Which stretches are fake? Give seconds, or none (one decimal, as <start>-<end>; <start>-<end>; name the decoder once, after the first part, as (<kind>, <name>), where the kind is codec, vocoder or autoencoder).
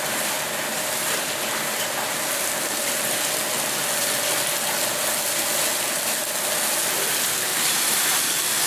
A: 7.5-8.2 (vocoder, BigVGAN v2)